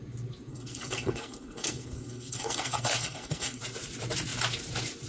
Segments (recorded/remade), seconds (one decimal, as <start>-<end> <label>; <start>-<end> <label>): 0.0-0.5 recorded; 0.5-3.6 remade; 3.6-5.1 recorded